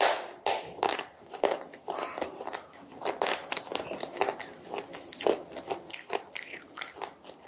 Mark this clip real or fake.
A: real